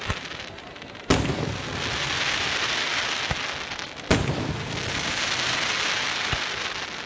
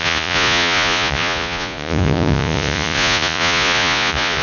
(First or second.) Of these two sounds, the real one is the first